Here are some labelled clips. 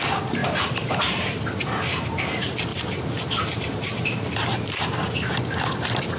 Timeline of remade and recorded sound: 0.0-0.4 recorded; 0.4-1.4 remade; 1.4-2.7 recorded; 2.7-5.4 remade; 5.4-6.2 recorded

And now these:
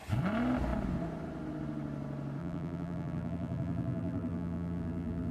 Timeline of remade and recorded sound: 0.0-2.4 recorded; 2.4-5.3 remade

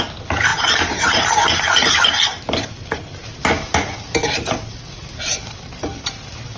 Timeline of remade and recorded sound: 0.0-0.5 recorded; 0.5-1.6 remade; 1.6-6.6 recorded